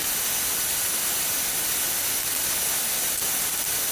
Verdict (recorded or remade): recorded